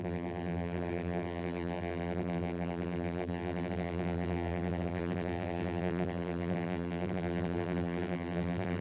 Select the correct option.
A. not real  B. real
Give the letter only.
A